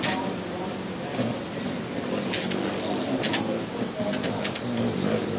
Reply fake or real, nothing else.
real